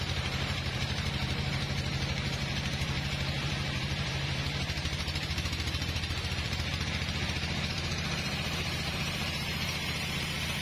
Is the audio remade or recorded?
remade